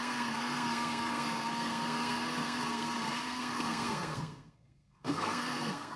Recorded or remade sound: remade